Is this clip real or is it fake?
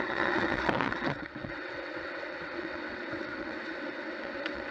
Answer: fake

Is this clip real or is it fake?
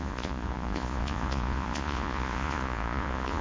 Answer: fake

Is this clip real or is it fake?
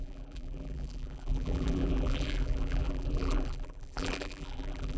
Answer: fake